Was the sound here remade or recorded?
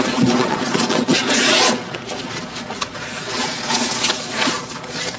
remade